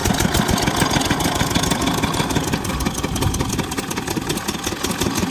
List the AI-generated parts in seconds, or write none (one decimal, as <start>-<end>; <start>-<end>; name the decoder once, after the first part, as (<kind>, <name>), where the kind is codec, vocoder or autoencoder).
none